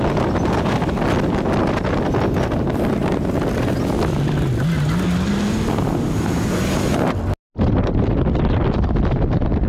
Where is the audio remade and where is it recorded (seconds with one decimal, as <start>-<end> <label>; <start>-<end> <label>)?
0.0-9.7 recorded